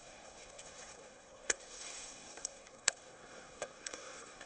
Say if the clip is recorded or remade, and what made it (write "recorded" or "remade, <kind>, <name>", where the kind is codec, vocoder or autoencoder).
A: remade, codec, SNAC